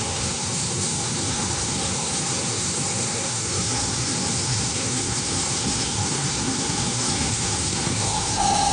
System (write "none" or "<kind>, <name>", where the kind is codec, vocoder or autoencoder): codec, SNAC